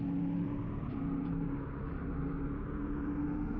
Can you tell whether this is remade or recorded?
recorded